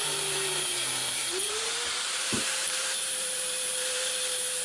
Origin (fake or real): fake